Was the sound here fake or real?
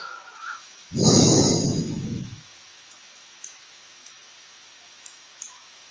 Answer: fake